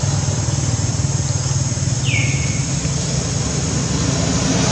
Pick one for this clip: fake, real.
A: real